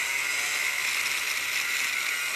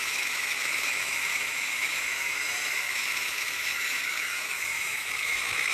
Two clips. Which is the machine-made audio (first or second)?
second